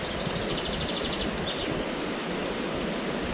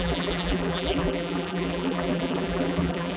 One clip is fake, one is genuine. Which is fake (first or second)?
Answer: second